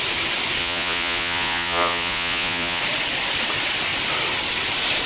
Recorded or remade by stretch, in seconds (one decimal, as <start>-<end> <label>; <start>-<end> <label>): 0.0-0.6 recorded; 0.6-2.8 remade; 2.8-5.1 recorded